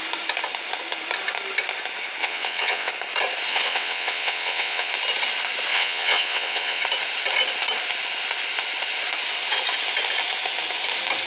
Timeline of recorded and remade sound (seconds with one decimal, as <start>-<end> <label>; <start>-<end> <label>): 0.0-2.2 recorded; 2.2-2.9 remade; 2.9-3.5 recorded; 3.5-4.9 remade; 4.9-5.7 recorded; 5.7-6.8 remade; 6.8-11.3 recorded